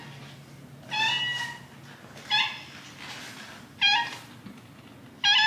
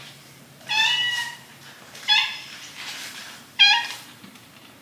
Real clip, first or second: first